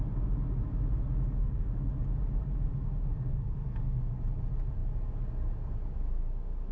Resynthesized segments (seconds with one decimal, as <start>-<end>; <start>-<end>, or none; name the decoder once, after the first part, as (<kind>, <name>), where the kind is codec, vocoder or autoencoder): 1.4-1.9 (codec, SNAC); 3.3-4.2